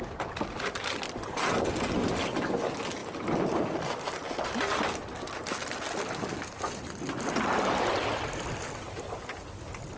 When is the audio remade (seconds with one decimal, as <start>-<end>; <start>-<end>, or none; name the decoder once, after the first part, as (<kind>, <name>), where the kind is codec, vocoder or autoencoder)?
none